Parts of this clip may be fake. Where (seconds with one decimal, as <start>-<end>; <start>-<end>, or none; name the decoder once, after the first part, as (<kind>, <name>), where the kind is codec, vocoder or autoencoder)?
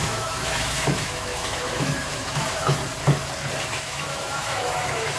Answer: 0.0-2.8 (autoencoder, DAC-VAE); 3.7-5.2